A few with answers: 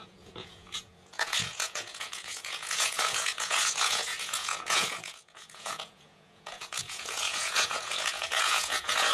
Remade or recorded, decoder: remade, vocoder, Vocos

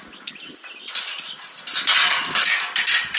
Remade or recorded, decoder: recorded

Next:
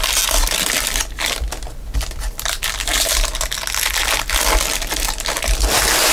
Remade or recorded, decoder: recorded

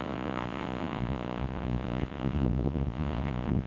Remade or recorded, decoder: remade, vocoder, Vocos